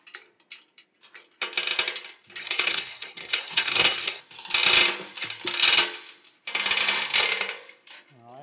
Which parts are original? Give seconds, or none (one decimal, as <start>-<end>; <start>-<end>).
0.0-2.4; 4.2-8.4